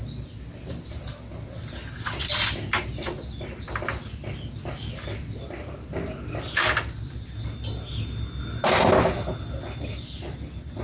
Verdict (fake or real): real